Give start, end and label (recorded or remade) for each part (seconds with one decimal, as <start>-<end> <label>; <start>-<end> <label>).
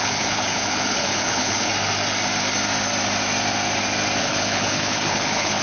0.0-1.7 remade; 1.7-4.2 recorded; 4.2-5.6 remade